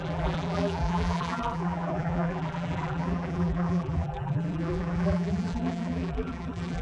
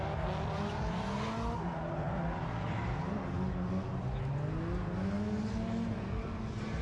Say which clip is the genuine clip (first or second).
second